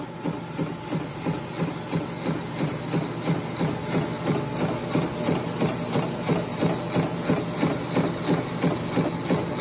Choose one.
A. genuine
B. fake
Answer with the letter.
A